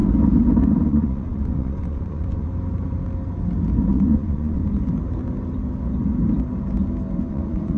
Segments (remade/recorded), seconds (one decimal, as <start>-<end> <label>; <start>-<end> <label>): 0.0-0.8 recorded; 0.8-2.5 remade; 2.5-3.9 recorded; 3.9-4.6 remade; 4.6-7.3 recorded; 7.3-7.8 remade